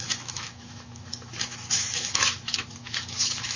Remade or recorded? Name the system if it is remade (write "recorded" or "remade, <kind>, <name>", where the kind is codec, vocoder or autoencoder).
remade, autoencoder, DAC-VAE